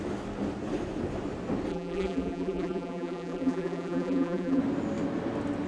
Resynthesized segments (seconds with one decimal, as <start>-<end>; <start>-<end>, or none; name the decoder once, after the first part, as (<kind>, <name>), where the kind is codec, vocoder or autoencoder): 1.7-4.6 (vocoder, BigVGAN v2)